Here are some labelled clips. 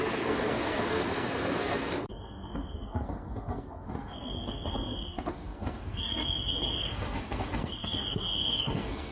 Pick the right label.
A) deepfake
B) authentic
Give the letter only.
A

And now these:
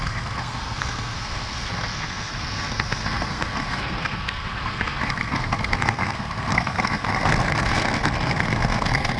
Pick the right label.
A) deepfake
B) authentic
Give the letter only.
A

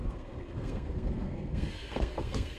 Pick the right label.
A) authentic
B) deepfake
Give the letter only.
B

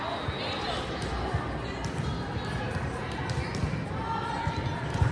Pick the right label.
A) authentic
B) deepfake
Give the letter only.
A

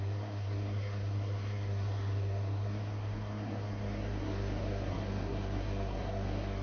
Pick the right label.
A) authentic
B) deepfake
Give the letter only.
B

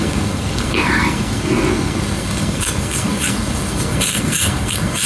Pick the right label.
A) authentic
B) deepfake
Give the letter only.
B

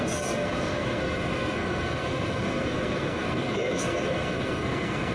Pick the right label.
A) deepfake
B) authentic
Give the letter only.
A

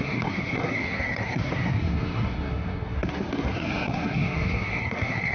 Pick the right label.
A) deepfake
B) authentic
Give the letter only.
A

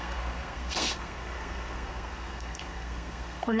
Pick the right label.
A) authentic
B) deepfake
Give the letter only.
B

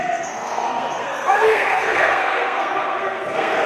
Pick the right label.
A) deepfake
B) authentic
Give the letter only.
A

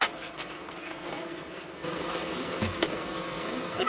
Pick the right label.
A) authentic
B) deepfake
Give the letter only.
B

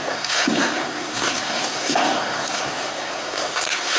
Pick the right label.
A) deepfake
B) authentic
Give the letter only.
A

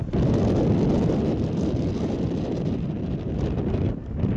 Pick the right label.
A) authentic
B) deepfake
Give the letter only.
A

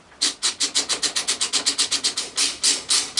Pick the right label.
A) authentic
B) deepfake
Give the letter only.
A